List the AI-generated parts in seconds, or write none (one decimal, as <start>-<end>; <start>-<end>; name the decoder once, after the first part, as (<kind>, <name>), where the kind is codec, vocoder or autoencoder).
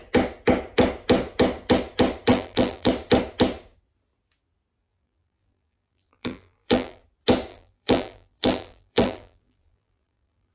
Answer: 2.3-2.9 (vocoder, BigVGAN v2); 4.8-7.0; 7.5-10.5